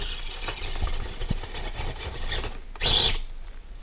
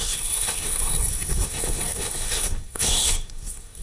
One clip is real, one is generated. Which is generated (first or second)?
second